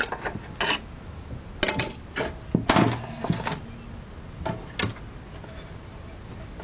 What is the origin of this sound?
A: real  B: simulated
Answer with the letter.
A